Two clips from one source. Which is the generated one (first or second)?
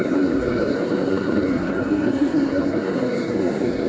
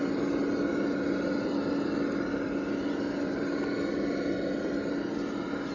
first